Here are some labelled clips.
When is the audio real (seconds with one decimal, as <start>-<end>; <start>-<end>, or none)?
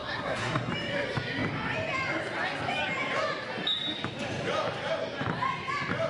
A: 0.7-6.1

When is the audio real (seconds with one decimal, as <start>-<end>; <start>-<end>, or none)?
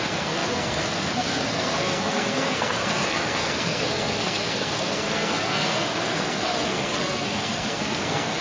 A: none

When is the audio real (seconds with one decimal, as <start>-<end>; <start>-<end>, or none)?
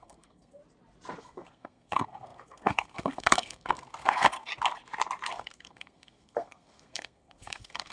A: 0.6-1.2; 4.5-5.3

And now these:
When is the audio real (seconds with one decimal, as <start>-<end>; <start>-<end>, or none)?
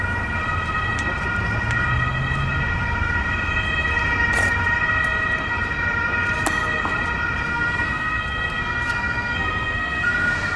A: 0.0-7.5